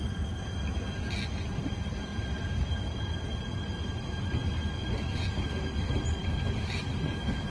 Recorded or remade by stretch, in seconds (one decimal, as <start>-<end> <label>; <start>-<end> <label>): 0.0-2.1 recorded; 2.1-3.4 remade; 3.4-6.2 recorded; 6.2-6.8 remade; 6.8-7.5 recorded